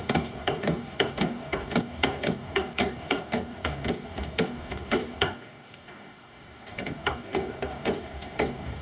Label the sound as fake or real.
fake